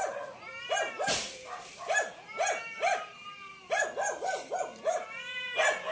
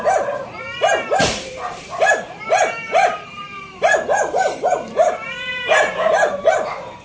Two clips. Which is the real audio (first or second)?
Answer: first